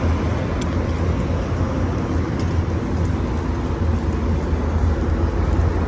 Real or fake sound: real